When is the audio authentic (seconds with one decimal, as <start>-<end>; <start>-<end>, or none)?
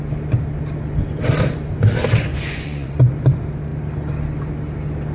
0.0-2.3; 3.1-5.1